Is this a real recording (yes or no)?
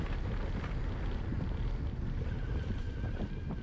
yes